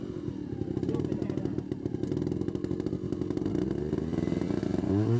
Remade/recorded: recorded